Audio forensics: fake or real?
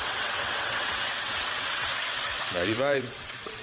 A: fake